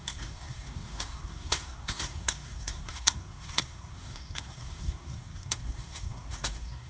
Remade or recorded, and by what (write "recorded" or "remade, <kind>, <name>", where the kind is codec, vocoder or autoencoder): remade, codec, SNAC